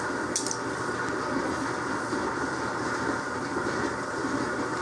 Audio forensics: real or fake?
real